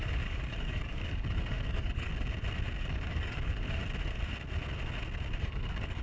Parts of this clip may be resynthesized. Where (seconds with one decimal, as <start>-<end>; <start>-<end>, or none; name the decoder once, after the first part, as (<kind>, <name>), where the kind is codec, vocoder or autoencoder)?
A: 0.0-2.1 (codec, DAC); 2.8-3.8; 5.4-6.0